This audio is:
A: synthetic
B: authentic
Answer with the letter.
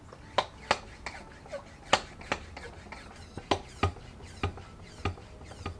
B